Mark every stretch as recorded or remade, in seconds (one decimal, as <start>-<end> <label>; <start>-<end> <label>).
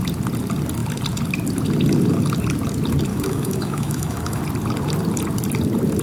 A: 0.0-3.1 recorded; 3.1-4.4 remade; 4.4-6.0 recorded